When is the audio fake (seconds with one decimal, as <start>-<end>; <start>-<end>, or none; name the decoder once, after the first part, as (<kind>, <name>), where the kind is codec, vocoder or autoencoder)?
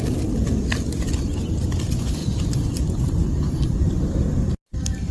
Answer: none